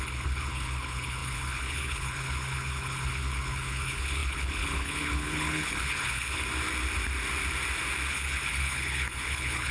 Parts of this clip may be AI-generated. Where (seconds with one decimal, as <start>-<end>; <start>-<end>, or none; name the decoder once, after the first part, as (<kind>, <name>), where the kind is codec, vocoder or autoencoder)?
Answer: 0.0-6.4 (codec, HILCodec); 8.1-9.7